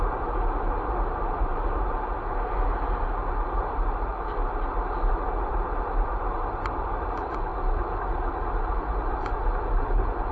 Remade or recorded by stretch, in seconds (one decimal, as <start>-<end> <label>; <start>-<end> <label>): 0.0-4.1 remade; 4.1-5.5 recorded; 5.5-7.5 remade; 7.5-8.8 recorded; 8.8-10.3 remade